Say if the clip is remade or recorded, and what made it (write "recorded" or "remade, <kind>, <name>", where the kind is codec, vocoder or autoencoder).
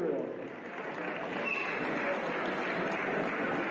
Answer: recorded